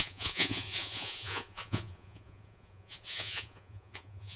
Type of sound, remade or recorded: remade